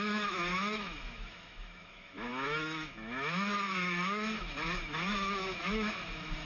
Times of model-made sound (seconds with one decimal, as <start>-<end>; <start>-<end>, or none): 0.0-6.4